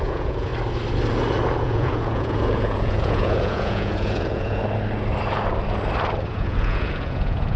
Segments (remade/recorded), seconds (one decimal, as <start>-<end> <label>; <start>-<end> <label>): 0.0-0.5 remade; 0.5-1.6 recorded; 1.6-4.6 remade; 4.6-6.3 recorded; 6.3-7.6 remade